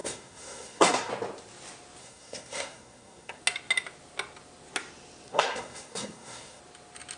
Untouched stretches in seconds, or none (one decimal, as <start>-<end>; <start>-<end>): 1.1-2.0; 3.4-5.3; 6.6-7.2